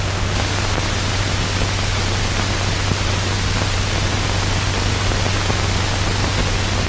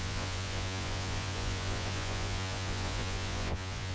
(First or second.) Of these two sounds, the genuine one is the first